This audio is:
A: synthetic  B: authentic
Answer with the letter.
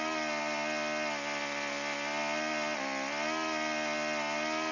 B